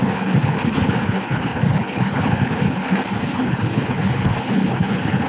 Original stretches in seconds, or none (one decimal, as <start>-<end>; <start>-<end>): none